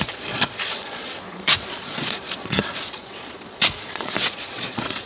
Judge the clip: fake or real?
fake